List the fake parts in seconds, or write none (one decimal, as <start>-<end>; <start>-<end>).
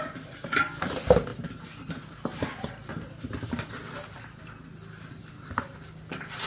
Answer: none